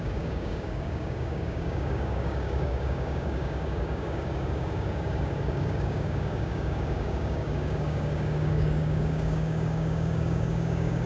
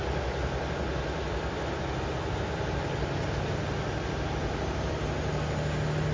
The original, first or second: second